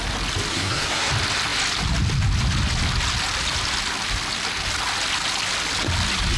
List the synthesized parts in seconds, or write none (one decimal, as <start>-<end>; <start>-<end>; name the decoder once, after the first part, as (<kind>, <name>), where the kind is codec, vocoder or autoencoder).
0.5-1.1 (codec, SNAC)